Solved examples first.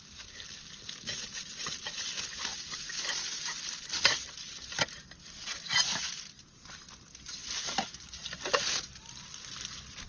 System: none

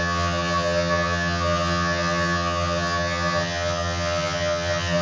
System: vocoder, HiFi-GAN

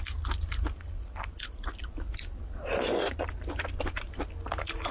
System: none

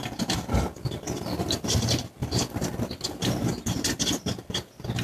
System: none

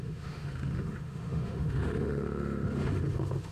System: autoencoder, DAC-VAE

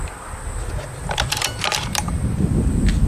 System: none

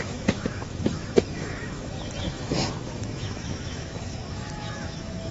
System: autoencoder, DAC-VAE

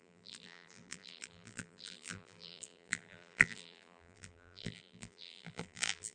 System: vocoder, BigVGAN v2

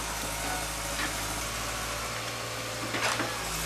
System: none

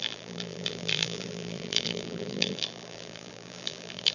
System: vocoder, BigVGAN v2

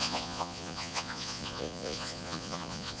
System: vocoder, Vocos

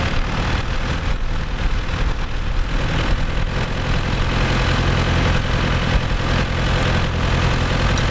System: none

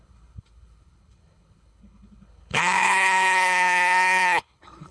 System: codec, HILCodec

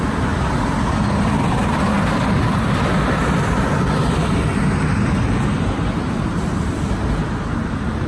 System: none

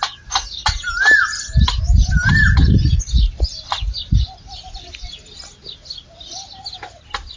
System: none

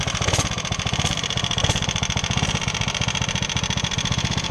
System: vocoder, BigVGAN v2